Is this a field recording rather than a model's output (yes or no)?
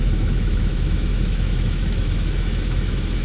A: no